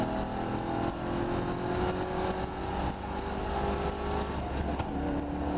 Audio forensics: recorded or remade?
recorded